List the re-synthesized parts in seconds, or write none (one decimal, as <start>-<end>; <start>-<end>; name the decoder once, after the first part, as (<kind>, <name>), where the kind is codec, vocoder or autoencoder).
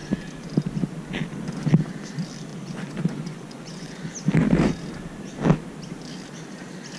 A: 2.5-4.1 (vocoder, Vocos)